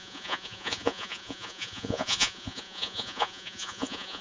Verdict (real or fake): fake